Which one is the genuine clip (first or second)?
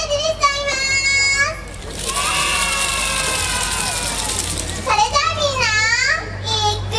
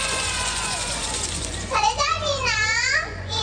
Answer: first